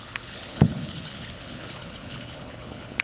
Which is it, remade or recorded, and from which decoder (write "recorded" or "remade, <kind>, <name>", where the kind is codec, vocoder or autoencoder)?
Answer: remade, codec, HILCodec